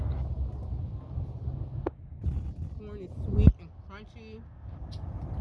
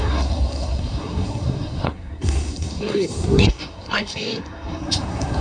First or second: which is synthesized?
second